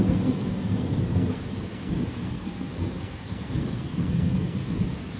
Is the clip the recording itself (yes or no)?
no